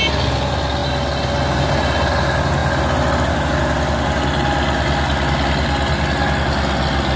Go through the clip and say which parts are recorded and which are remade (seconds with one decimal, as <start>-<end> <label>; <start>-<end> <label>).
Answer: 0.0-7.2 recorded